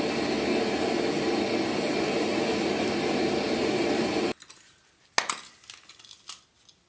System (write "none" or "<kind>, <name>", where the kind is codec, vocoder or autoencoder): none